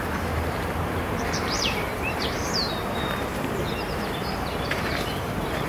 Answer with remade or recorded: remade